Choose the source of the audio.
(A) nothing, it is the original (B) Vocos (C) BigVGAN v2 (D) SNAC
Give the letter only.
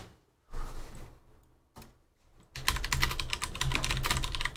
A